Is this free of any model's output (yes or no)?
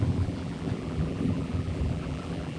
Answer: no